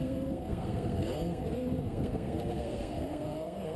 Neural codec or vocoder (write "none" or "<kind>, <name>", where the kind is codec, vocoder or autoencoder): codec, SNAC